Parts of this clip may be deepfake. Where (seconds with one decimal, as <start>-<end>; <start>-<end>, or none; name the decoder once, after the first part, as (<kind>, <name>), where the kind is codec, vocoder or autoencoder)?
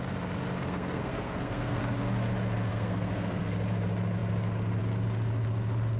0.6-1.8 (codec, SNAC); 2.7-3.4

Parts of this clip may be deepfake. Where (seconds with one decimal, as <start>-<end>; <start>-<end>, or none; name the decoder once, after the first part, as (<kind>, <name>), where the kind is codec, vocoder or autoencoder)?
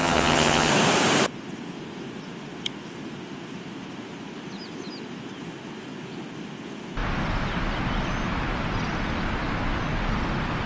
0.0-0.7 (vocoder, HiFi-GAN)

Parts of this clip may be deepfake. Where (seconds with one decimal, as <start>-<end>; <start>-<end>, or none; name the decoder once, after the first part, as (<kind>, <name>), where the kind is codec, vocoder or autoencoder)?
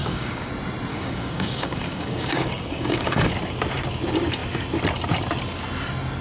0.0-0.5 (codec, DAC); 0.9-3.3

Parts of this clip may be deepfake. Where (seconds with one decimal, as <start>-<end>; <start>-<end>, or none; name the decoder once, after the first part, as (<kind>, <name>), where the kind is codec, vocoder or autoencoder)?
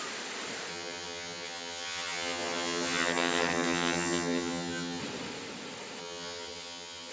0.7-5.0 (vocoder, HiFi-GAN); 6.0-7.1